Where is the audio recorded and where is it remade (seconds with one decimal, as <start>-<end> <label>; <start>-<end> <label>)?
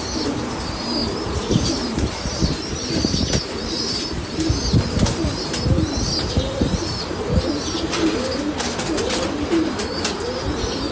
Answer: 0.0-10.9 remade